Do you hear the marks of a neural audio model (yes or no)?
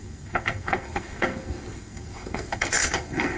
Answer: yes